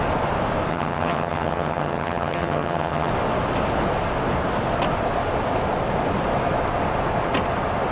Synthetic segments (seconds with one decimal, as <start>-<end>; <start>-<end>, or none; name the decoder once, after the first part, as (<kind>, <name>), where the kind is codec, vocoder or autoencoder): 0.7-3.1 (vocoder, HiFi-GAN)